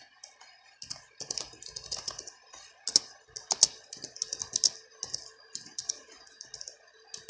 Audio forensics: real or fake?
real